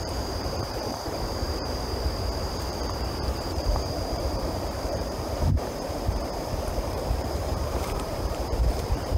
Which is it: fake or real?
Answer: fake